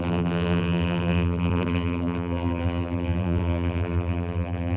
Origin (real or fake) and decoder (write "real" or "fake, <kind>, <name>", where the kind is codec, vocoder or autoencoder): fake, vocoder, BigVGAN v2